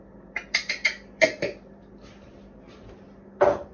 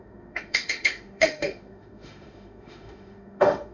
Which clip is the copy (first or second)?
second